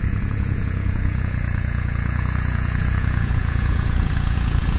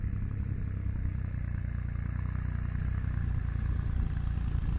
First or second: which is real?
second